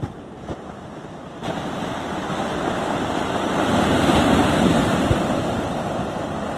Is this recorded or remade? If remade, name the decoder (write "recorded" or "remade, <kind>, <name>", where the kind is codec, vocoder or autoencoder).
recorded